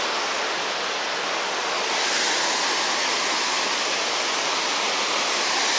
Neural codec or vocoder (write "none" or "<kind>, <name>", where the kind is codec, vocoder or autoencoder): none